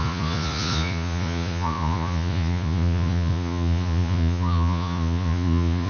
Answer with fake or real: fake